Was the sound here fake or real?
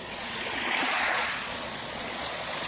fake